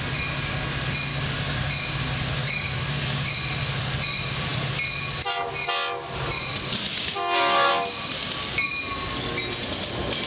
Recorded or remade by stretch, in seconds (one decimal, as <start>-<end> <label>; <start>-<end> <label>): 0.0-1.1 recorded; 1.1-1.7 remade; 1.7-2.4 recorded; 2.4-3.3 remade; 3.3-6.9 recorded; 6.9-7.7 remade; 7.7-10.3 recorded